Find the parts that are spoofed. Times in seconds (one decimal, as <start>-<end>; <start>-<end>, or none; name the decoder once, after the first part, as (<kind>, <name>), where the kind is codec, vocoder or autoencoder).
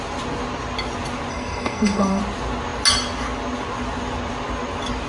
1.3-2.2 (codec, SNAC)